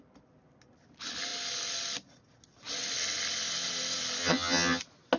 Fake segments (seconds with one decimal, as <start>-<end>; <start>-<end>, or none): 4.2-4.8